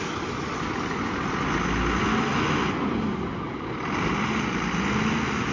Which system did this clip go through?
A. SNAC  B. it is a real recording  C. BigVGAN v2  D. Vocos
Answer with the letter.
B